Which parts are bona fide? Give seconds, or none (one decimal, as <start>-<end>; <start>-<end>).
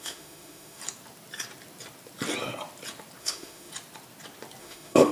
0.8-3.2; 3.7-4.6